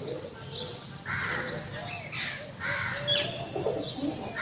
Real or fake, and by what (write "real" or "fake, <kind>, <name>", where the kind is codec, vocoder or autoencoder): real